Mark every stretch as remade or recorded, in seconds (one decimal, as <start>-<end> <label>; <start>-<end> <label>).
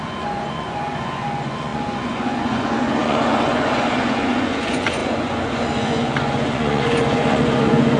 0.0-8.0 remade